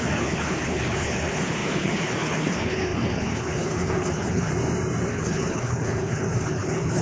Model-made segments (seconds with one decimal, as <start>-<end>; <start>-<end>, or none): 0.0-4.5; 5.1-7.0